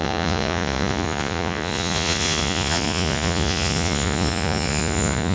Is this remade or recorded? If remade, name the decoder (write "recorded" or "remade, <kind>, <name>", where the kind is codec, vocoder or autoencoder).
remade, vocoder, Vocos